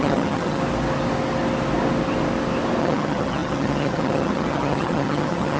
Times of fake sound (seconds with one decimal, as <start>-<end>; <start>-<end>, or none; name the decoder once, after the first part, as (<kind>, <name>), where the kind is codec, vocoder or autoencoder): 0.0-0.6 (vocoder, HiFi-GAN); 2.8-5.6